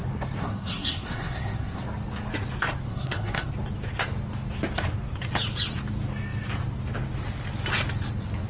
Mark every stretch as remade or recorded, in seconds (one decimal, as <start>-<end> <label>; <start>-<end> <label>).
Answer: 0.0-0.4 recorded; 0.4-1.8 remade; 1.8-2.9 recorded; 2.9-3.5 remade; 3.5-8.5 recorded

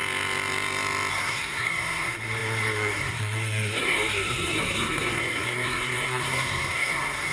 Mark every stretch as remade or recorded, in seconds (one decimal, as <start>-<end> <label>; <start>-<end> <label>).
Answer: 0.0-1.1 recorded; 1.1-7.3 remade

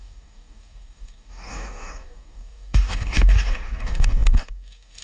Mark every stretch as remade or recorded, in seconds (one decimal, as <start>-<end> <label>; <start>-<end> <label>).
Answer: 0.0-5.0 remade

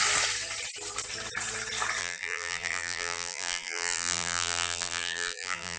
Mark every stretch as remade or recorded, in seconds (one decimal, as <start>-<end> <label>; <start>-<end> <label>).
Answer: 0.0-2.0 recorded; 2.0-5.8 remade

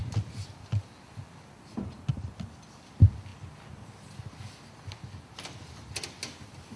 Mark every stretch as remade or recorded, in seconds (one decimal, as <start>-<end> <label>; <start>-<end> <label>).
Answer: 0.0-6.8 recorded